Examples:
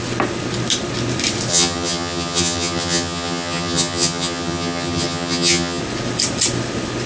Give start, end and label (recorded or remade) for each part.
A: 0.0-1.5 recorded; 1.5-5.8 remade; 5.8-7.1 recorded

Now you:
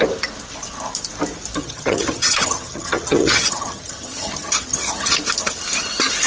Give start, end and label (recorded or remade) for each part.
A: 0.0-1.6 recorded; 1.6-5.1 remade; 5.1-6.3 recorded

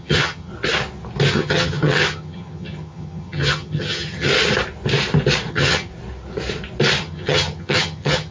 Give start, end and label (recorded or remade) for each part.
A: 0.0-0.5 remade; 0.5-1.3 recorded; 1.3-4.3 remade; 4.3-5.5 recorded; 5.5-5.9 remade; 5.9-7.0 recorded; 7.0-8.3 remade

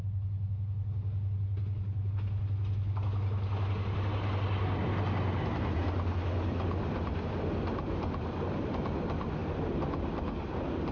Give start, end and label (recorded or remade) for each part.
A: 0.0-10.9 recorded

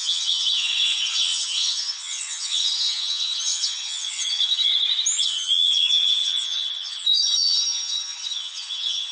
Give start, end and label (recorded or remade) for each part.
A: 0.0-4.7 remade; 4.7-5.2 recorded; 5.2-9.1 remade

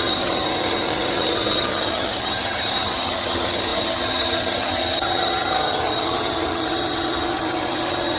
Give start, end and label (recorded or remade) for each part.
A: 0.0-8.2 remade